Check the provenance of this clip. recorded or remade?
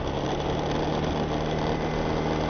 recorded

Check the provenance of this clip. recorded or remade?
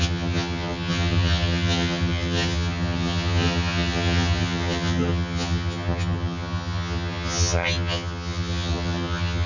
remade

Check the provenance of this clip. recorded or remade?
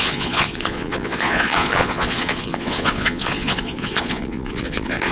remade